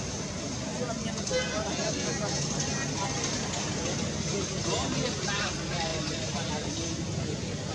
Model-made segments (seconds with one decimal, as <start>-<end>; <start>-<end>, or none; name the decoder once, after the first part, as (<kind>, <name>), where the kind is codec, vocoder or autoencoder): none